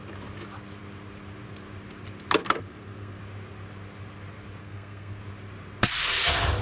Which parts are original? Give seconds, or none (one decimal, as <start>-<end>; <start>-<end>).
0.0-2.4; 3.2-4.6; 5.2-6.6